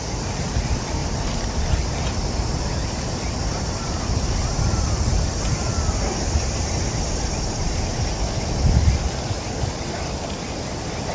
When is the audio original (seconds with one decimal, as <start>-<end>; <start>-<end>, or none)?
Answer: 0.0-11.1